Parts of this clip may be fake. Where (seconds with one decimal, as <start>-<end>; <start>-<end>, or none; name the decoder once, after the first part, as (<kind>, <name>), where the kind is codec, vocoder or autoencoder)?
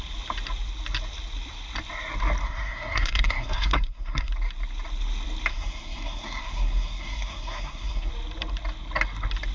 2.4-4.3 (codec, SNAC); 5.5-8.1